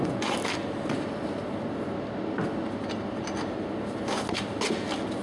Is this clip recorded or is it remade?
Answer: recorded